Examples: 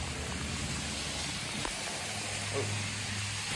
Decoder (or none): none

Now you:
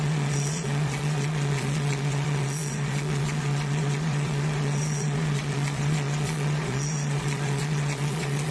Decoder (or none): vocoder, Vocos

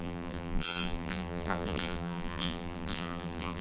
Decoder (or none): vocoder, BigVGAN v2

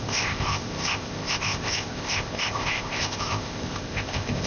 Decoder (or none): codec, ZipCodec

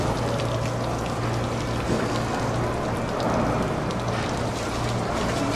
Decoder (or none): none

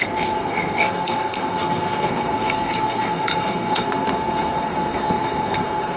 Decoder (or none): codec, SNAC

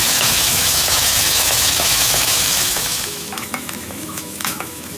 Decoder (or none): autoencoder, DAC-VAE